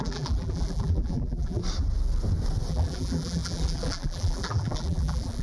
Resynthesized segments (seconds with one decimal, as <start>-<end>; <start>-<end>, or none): 0.0-1.6; 2.7-5.4

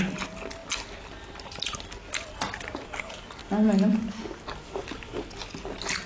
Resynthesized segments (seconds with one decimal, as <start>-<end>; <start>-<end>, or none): none

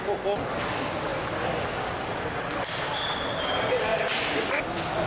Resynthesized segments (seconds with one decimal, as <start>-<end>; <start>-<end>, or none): none

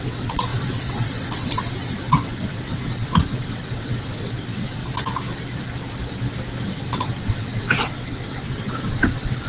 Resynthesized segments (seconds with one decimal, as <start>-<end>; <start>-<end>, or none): 0.0-4.8; 6.6-9.5